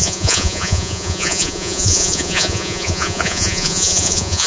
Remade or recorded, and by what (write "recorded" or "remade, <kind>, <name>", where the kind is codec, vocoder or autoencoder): remade, vocoder, Vocos